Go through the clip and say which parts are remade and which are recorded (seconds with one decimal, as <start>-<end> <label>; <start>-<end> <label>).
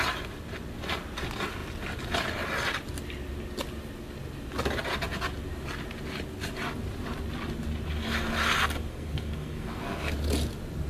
0.0-8.9 recorded; 8.9-10.1 remade; 10.1-10.9 recorded